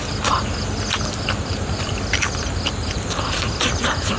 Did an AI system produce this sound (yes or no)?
no